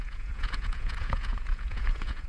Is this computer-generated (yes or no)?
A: yes